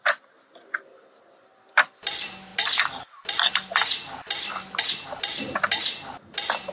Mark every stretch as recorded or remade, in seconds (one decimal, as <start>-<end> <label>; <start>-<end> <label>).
0.0-6.7 recorded